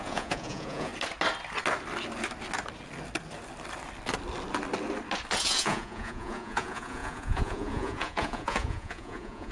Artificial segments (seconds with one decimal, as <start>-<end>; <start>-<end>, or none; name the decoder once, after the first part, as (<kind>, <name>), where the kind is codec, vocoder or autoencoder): 0.0-0.9 (vocoder, Vocos); 5.4-9.5